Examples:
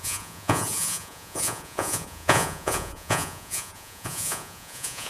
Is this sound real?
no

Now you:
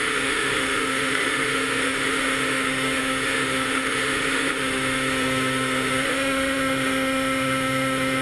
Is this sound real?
no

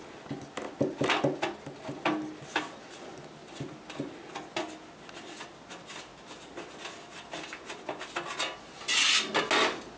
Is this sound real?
yes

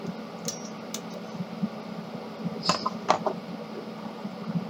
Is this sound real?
yes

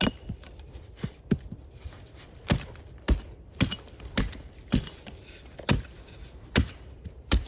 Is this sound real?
no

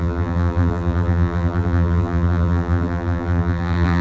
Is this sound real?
no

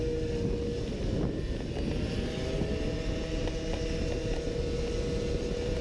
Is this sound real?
yes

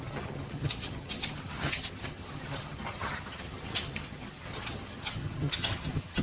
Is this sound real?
no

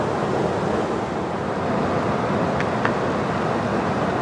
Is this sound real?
yes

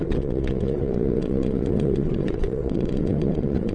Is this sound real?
no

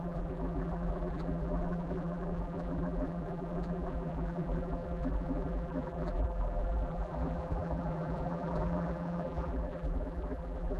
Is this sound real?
no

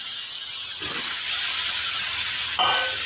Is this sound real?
yes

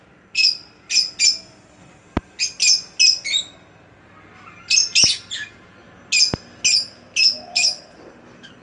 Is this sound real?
yes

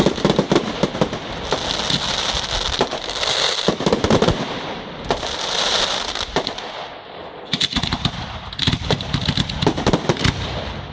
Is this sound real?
yes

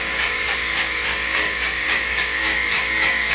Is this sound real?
no